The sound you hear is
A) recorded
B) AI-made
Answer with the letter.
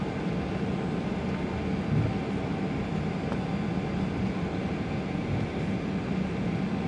A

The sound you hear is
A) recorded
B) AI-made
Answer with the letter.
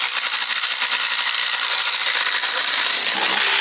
A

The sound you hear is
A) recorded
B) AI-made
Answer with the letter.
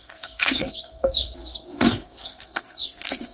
B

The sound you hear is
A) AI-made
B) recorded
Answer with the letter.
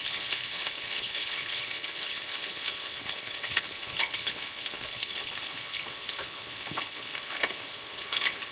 A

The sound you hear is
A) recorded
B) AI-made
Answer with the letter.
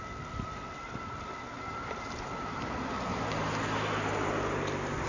A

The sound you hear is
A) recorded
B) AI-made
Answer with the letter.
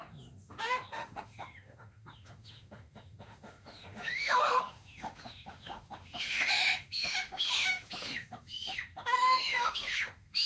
B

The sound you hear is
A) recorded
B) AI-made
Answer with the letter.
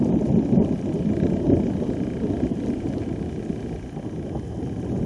A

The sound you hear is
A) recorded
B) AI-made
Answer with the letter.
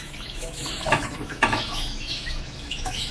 B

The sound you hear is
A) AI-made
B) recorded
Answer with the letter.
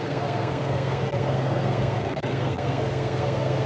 A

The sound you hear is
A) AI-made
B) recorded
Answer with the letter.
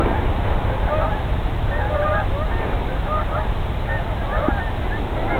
B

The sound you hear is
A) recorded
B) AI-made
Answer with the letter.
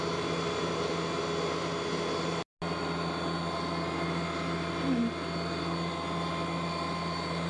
A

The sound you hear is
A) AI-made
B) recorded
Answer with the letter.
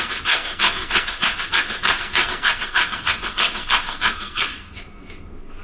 A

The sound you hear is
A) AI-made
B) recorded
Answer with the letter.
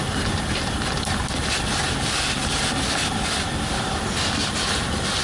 B